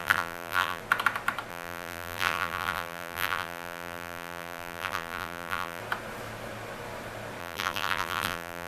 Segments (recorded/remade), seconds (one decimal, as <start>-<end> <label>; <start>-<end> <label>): 0.0-0.8 remade; 0.8-1.5 recorded; 1.5-5.8 remade; 5.8-7.4 recorded; 7.4-8.7 remade

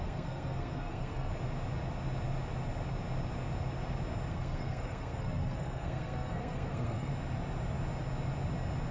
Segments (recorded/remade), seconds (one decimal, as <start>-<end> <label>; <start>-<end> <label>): 0.0-1.3 remade; 1.3-4.3 recorded; 4.3-7.1 remade; 7.1-8.9 recorded

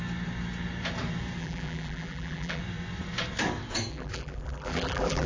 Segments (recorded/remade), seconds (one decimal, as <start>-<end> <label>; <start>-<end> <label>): 0.0-1.4 recorded; 1.4-2.6 remade; 2.6-3.9 recorded; 3.9-5.3 remade